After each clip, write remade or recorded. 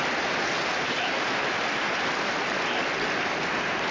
recorded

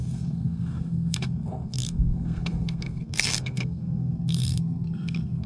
remade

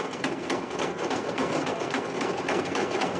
remade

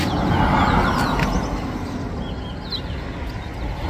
recorded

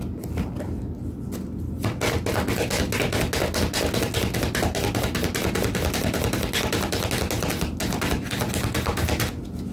recorded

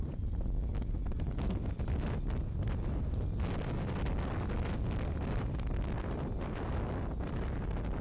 recorded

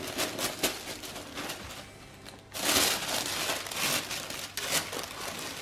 recorded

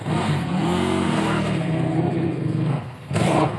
remade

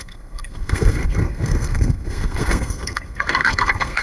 remade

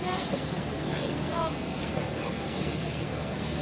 remade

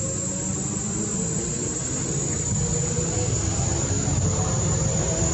recorded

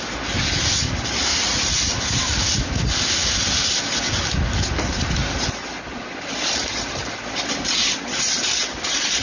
recorded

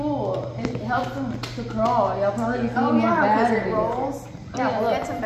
recorded